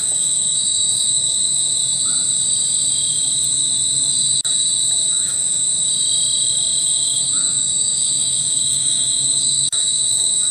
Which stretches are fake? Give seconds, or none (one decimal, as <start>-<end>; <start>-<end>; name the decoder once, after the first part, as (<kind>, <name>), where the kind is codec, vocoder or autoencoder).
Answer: 0.0-1.8 (autoencoder, DAC-VAE); 5.1-5.7; 6.8-10.5